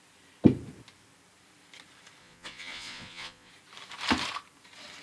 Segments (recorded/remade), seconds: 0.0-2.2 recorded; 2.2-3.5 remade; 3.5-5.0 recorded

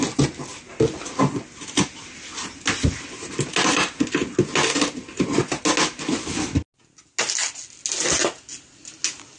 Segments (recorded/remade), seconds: 0.0-9.4 recorded